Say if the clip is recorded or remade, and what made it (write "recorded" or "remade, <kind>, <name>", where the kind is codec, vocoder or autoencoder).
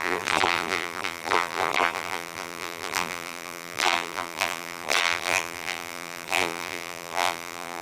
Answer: remade, vocoder, BigVGAN v2